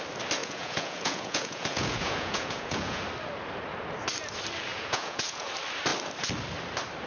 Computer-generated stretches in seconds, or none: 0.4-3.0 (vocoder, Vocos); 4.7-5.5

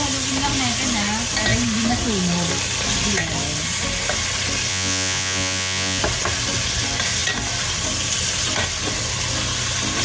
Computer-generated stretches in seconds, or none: 4.7-6.0 (vocoder, Vocos)

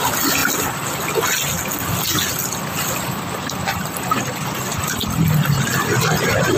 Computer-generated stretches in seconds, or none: none

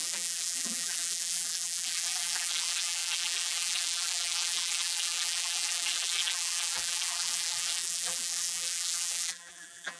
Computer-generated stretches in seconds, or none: 0.0-10.0 (vocoder, BigVGAN v2)

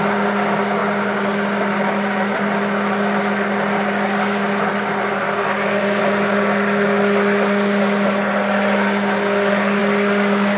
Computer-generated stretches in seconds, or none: none

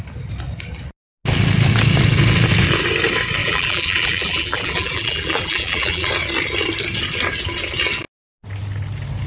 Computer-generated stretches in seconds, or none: 3.4-6.1 (vocoder, BigVGAN v2)

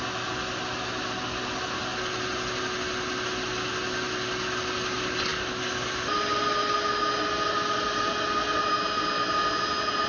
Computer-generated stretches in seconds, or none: none

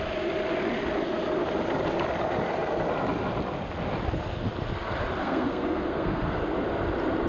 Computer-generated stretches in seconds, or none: 5.2-6.4 (codec, SNAC)